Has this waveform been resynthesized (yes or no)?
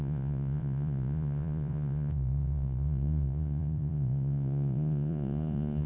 yes